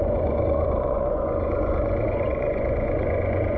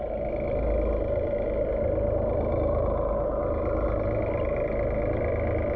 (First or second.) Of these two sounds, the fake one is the first